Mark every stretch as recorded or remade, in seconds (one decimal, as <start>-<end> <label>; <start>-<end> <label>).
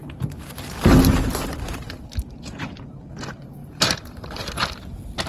0.0-3.2 remade; 3.2-3.6 recorded; 3.6-4.4 remade; 4.4-5.3 recorded